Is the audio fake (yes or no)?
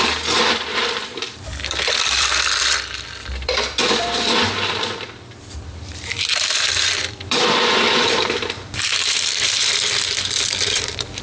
yes